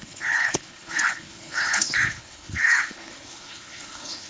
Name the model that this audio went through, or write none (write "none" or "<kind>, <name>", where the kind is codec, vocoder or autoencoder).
codec, HILCodec